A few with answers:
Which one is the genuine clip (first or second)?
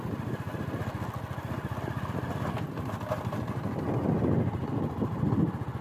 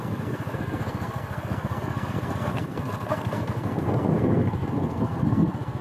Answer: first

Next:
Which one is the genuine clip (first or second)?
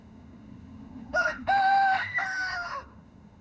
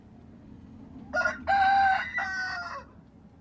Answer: second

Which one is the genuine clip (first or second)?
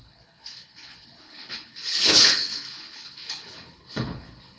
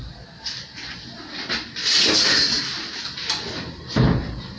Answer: second